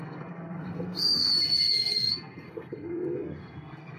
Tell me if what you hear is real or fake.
fake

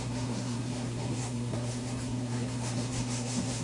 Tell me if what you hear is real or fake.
fake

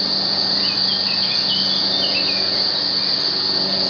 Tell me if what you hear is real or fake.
real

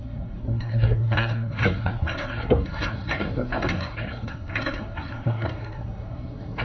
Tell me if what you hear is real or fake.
fake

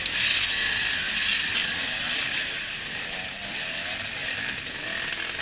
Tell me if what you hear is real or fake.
real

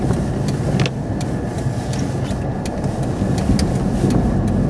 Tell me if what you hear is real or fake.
real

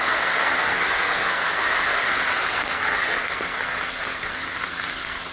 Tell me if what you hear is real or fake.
fake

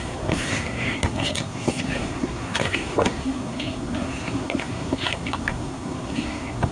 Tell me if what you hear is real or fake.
fake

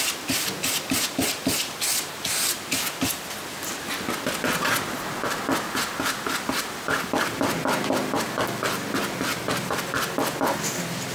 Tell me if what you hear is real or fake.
real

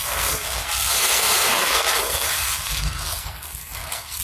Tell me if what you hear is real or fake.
fake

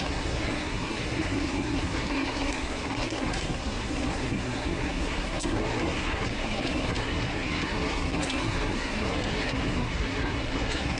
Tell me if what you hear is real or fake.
fake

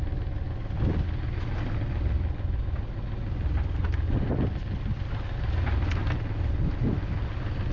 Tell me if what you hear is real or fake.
real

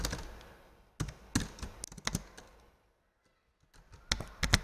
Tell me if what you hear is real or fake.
real